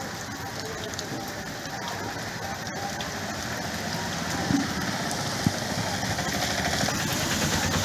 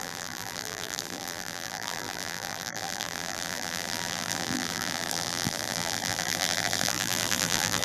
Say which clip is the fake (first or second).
second